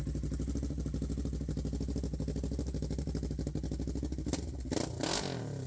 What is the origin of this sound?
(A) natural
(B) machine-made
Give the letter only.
A